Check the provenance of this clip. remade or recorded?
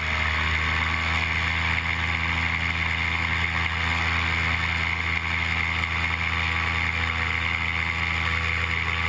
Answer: recorded